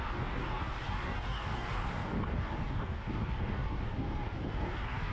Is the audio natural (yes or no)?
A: no